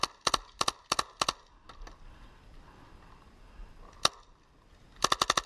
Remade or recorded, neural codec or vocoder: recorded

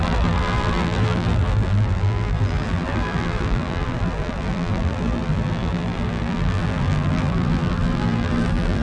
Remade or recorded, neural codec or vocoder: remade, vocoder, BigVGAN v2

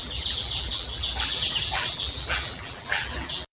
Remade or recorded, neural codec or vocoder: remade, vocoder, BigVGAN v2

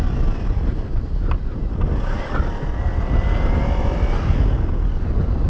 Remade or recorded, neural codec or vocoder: recorded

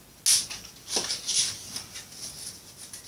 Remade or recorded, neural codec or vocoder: recorded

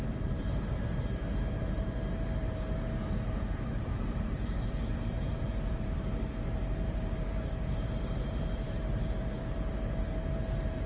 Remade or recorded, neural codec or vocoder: remade, vocoder, BigVGAN v2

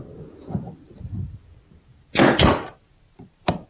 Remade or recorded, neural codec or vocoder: recorded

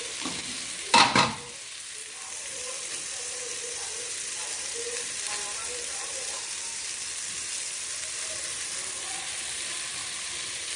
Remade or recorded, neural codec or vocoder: remade, vocoder, BigVGAN v2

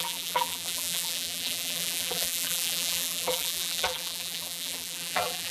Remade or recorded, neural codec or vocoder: remade, vocoder, BigVGAN v2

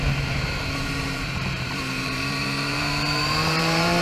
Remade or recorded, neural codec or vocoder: remade, vocoder, BigVGAN v2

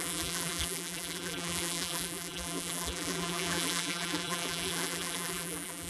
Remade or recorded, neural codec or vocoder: remade, vocoder, BigVGAN v2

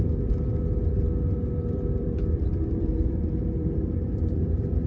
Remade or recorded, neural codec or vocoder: remade, vocoder, BigVGAN v2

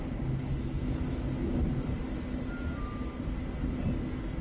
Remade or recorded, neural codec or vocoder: recorded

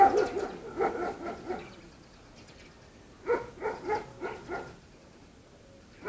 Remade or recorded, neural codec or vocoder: recorded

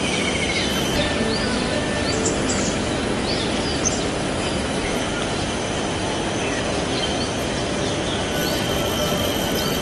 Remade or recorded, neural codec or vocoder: recorded